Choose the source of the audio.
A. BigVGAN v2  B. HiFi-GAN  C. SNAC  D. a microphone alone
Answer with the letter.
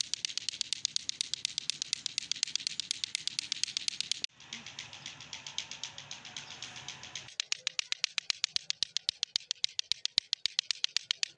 D